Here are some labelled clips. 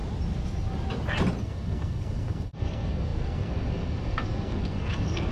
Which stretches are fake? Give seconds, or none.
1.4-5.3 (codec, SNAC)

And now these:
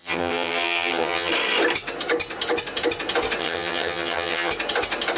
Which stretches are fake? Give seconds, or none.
0.0-1.3 (vocoder, HiFi-GAN); 3.4-4.5

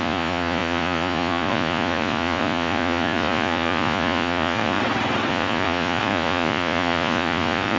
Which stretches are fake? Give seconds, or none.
0.0-4.8 (vocoder, Vocos); 5.3-7.8

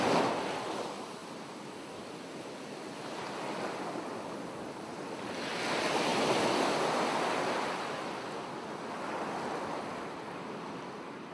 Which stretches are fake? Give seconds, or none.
none